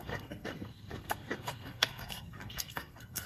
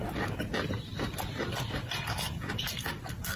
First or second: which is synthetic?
first